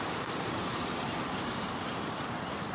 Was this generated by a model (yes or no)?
yes